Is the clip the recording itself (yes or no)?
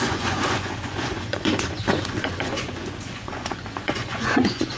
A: no